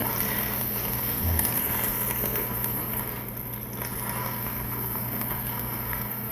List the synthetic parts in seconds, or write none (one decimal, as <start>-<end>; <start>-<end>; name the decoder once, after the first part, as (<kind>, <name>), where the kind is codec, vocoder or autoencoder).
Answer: 0.6-2.9 (codec, SNAC); 4.2-6.3